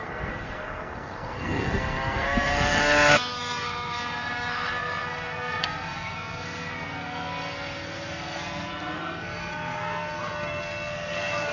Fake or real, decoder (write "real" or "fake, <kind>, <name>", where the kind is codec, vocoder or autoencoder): fake, codec, SNAC